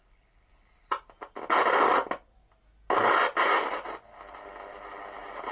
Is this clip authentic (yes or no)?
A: yes